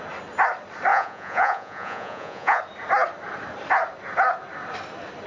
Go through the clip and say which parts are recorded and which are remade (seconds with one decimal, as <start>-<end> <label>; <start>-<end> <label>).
0.0-0.9 recorded; 0.9-2.6 remade; 2.6-5.3 recorded